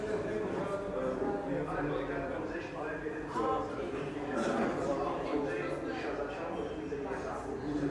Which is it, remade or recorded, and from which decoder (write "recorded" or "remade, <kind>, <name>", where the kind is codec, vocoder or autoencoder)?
recorded